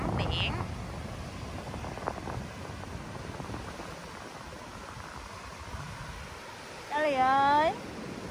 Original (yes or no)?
yes